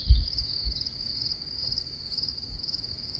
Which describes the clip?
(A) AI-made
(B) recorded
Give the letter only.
A